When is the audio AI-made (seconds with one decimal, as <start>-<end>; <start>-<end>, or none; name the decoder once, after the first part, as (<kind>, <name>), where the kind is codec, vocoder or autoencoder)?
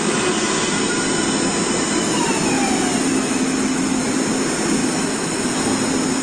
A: 3.1-4.0 (autoencoder, DAC-VAE); 4.8-5.4